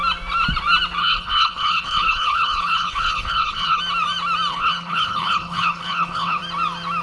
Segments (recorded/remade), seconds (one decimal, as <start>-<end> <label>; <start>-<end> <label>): 0.0-1.0 recorded; 1.0-3.8 remade; 3.8-4.5 recorded; 4.5-6.4 remade; 6.4-7.0 recorded